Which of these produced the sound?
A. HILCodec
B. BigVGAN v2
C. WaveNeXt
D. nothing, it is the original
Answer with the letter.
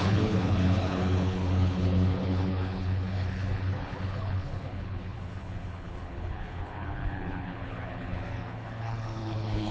A